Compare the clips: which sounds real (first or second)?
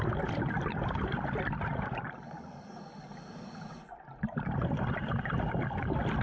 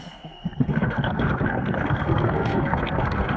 first